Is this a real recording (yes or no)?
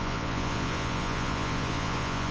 no